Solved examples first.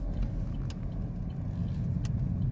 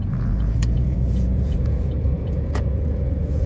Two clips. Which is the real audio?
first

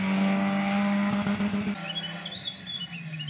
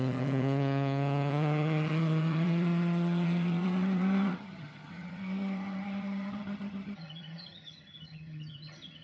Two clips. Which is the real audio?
first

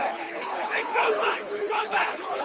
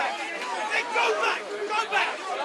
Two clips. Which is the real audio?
second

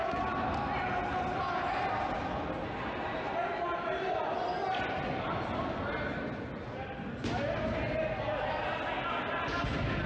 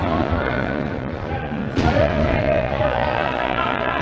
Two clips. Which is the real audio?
first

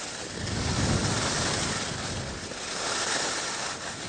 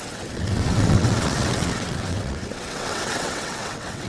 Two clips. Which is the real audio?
first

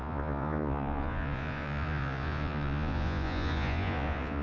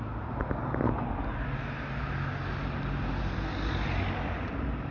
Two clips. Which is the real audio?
second